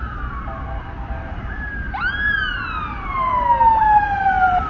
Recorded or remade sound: recorded